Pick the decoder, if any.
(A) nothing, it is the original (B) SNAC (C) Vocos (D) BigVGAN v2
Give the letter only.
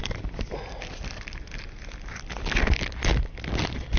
A